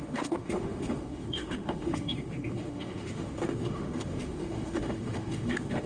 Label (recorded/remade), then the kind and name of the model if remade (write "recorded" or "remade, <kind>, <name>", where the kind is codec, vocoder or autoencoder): remade, autoencoder, DAC-VAE